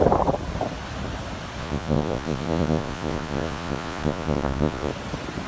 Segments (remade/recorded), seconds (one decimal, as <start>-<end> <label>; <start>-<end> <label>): 0.0-1.6 recorded; 1.6-4.9 remade; 4.9-5.5 recorded